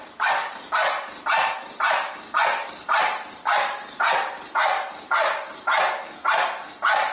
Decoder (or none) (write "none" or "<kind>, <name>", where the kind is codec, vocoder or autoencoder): none